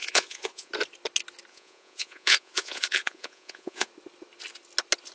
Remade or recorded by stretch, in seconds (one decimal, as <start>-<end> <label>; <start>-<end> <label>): 0.0-0.7 remade; 0.7-1.5 recorded; 1.5-3.9 remade; 3.9-5.1 recorded